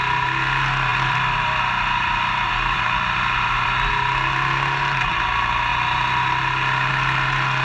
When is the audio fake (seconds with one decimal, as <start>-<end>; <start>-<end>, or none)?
0.9-3.9